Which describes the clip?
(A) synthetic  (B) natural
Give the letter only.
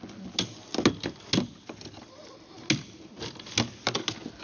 B